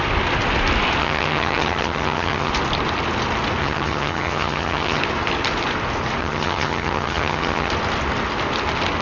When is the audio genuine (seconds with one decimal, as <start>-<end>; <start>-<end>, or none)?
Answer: 0.0-1.0; 2.5-3.6; 5.0-6.2; 7.7-9.0